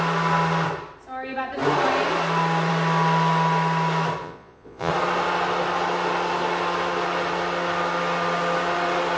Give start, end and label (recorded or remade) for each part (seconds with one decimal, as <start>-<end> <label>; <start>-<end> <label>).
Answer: 0.0-4.2 recorded; 4.2-4.9 remade; 4.9-9.2 recorded